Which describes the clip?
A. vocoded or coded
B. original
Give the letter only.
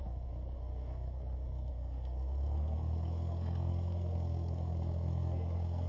A